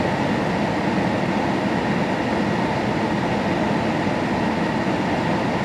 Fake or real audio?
real